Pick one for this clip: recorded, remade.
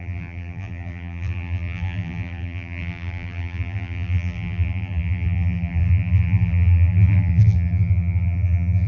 remade